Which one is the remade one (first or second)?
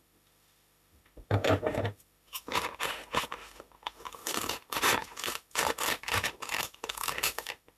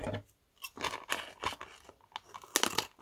first